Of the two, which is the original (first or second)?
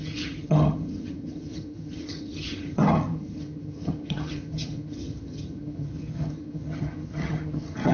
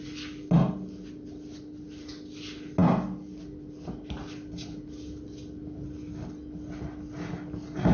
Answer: second